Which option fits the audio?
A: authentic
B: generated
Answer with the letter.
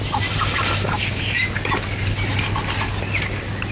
A